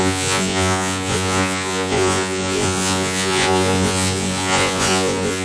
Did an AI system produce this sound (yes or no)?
yes